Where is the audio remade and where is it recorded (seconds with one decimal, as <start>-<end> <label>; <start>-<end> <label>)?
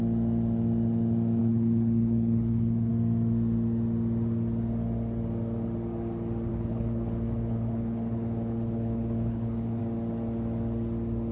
0.0-1.4 recorded; 1.4-2.9 remade; 2.9-6.5 recorded; 6.5-9.8 remade; 9.8-11.3 recorded